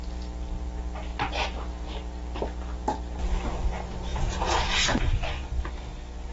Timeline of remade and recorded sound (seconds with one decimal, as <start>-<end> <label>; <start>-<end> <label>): 0.0-4.1 recorded; 4.1-5.6 remade; 5.6-6.3 recorded